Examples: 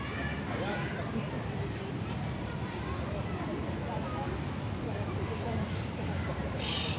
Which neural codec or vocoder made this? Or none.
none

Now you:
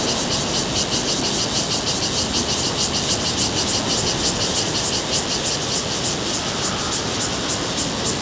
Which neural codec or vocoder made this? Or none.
none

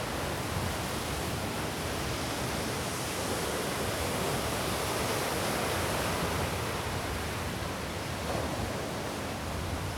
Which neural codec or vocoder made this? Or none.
none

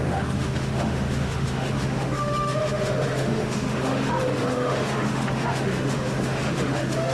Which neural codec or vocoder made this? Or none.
autoencoder, DAC-VAE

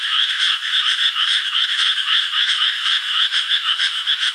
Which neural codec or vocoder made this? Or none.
autoencoder, DAC-VAE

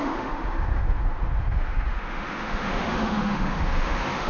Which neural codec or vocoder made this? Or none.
autoencoder, DAC-VAE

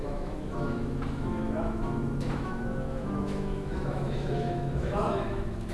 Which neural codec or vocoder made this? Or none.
autoencoder, DAC-VAE